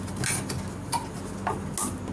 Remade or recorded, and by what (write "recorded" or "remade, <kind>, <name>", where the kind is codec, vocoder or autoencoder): recorded